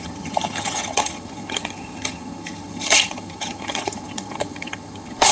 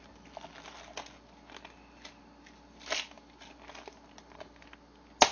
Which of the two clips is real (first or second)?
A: second